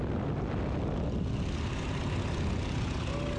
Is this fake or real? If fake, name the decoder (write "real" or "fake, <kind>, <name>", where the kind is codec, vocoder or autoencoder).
real